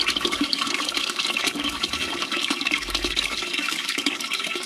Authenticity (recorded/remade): remade